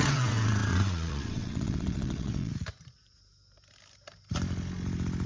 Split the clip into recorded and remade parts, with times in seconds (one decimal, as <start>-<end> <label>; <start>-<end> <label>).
0.0-2.5 remade; 2.5-5.3 recorded